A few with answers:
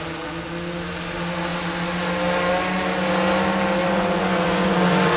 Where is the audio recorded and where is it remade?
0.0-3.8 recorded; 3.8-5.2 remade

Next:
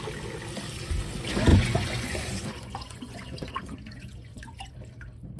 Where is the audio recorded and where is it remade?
0.0-1.5 recorded; 1.5-4.7 remade; 4.7-5.4 recorded

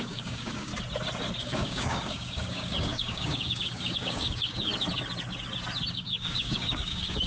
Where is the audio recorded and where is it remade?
0.0-0.7 remade; 0.7-1.4 recorded; 1.4-4.7 remade; 4.7-5.9 recorded; 5.9-7.3 remade

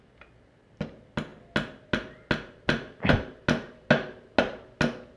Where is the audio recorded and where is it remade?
0.0-5.2 recorded

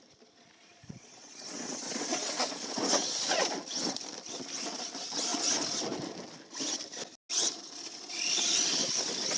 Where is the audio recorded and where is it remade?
0.0-0.7 recorded; 0.7-3.5 remade; 3.5-9.4 recorded